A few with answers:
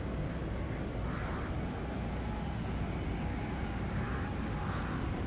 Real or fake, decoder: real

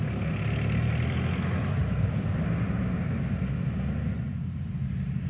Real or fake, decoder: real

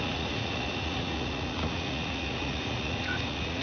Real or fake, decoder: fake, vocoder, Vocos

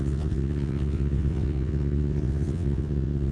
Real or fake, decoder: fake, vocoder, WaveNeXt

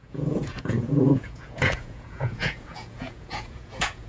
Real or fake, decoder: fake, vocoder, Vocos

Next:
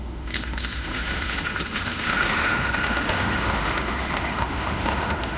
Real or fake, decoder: fake, autoencoder, DAC-VAE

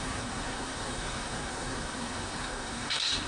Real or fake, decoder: fake, codec, SNAC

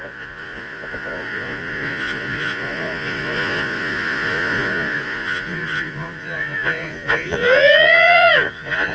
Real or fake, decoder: fake, vocoder, Vocos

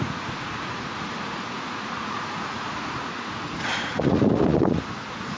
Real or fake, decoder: fake, vocoder, Vocos